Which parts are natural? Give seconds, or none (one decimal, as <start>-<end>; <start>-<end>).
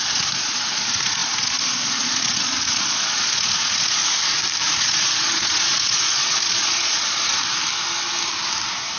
4.0-4.8; 7.4-9.0